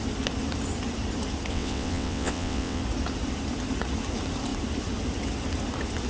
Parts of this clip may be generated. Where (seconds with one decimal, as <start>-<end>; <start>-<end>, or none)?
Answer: 1.5-2.8